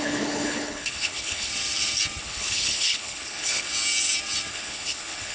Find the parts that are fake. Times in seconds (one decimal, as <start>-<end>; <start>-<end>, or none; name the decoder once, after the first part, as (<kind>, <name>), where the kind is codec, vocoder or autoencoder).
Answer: 0.0-1.5 (codec, HILCodec); 2.2-3.7; 4.5-5.3